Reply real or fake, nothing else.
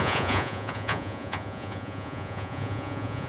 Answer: fake